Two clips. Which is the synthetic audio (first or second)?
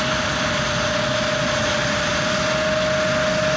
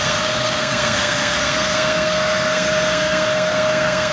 second